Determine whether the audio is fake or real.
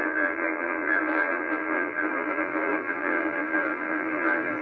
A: fake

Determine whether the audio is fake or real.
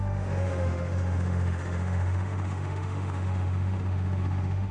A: fake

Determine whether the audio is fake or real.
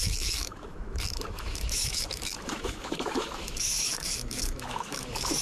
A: fake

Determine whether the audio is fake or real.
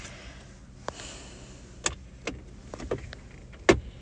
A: real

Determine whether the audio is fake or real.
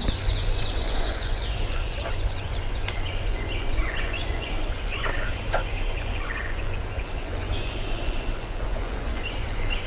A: fake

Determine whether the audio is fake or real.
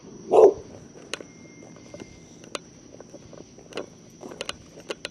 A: real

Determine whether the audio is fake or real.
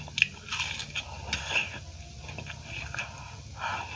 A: real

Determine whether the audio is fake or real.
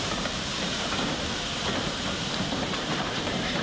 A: fake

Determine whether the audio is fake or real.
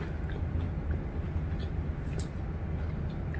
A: real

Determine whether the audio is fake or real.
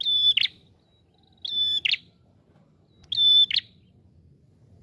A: real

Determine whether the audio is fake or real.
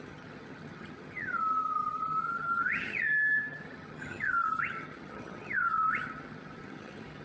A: fake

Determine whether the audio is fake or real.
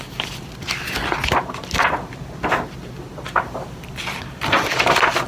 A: real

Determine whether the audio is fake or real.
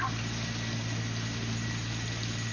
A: real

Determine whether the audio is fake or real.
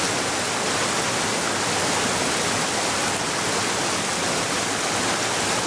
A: real